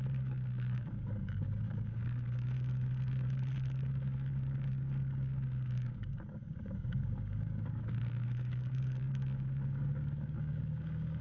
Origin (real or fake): fake